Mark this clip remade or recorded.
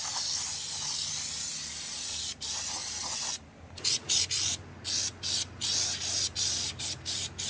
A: recorded